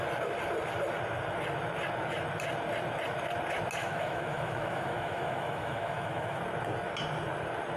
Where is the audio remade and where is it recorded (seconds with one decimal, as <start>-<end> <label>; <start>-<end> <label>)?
0.0-3.8 recorded; 3.8-6.4 remade; 6.4-7.8 recorded